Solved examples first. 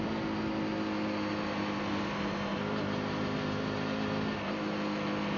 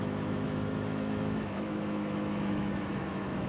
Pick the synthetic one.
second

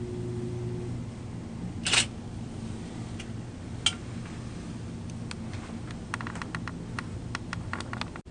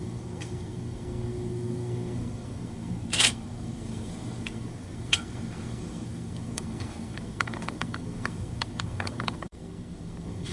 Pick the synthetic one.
second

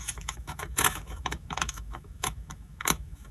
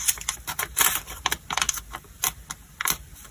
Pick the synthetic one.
first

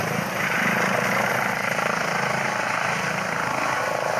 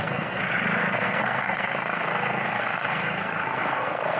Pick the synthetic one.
second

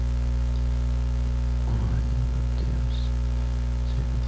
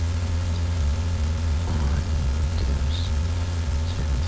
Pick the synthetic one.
second